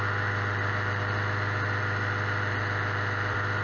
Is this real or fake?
real